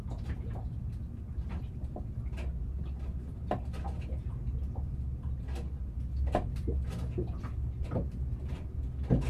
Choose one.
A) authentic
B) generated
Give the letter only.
A